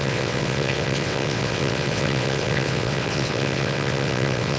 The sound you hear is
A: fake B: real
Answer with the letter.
A